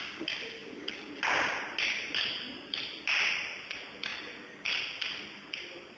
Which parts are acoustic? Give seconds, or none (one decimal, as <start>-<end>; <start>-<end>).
0.0-6.0